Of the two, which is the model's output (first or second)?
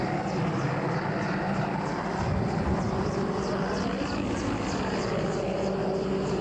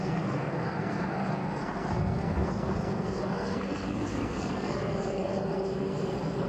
second